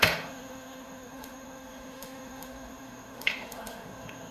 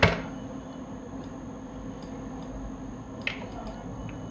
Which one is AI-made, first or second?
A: first